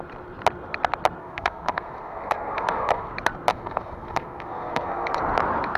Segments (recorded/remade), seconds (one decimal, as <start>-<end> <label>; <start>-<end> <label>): 0.0-1.2 recorded; 1.2-3.1 remade; 3.1-3.5 recorded; 3.5-5.2 remade; 5.2-5.8 recorded

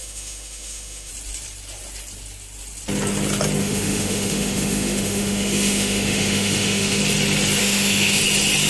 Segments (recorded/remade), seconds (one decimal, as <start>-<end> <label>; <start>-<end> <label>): 0.0-1.1 remade; 1.1-3.6 recorded; 3.6-7.0 remade; 7.0-7.6 recorded; 7.6-8.2 remade; 8.2-8.7 recorded

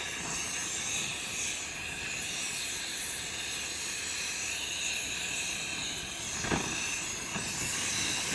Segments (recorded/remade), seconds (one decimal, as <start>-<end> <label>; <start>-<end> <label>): 0.0-8.3 recorded

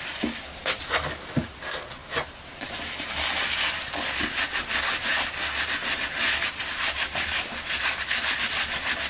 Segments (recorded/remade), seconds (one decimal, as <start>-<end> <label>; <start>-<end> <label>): 0.0-9.1 recorded

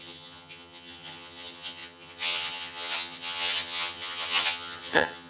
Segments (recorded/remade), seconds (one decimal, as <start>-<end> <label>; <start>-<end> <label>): 0.0-5.3 remade

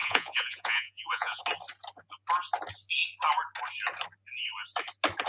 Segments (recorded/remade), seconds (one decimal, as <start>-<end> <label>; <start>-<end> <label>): 0.0-1.4 remade; 1.4-5.3 recorded

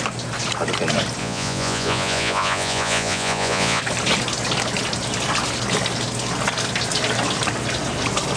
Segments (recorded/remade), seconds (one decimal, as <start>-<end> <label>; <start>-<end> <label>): 0.0-1.2 recorded; 1.2-3.8 remade; 3.8-8.4 recorded

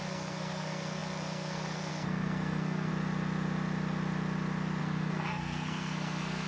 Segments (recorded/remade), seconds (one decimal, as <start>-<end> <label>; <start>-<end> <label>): 0.0-2.9 remade; 2.9-4.8 recorded; 4.8-6.5 remade